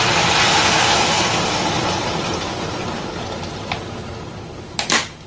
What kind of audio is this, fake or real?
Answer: real